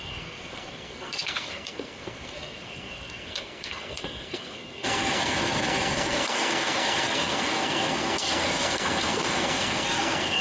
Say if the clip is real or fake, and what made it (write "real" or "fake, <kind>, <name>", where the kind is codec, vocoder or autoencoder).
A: fake, codec, SNAC